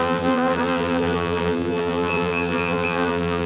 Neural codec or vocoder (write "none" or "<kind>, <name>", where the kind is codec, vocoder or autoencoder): vocoder, BigVGAN v2